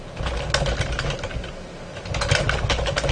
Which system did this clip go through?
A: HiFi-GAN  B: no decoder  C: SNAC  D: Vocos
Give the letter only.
B